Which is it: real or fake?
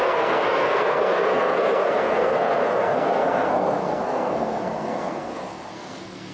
fake